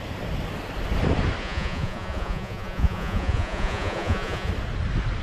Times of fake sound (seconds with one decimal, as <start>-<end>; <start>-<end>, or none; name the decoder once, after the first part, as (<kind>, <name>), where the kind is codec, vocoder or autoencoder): 1.4-4.5 (vocoder, Vocos)